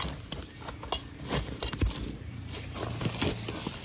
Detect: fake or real real